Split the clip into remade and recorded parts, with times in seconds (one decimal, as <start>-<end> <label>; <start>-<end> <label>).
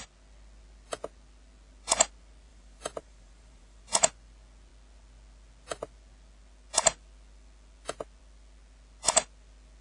0.0-2.5 recorded; 2.5-3.8 remade; 3.8-9.8 recorded